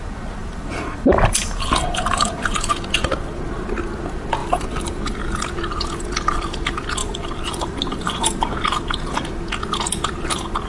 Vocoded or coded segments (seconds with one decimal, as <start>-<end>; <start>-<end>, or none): 0.4-2.7; 4.4-4.9; 7.0-8.5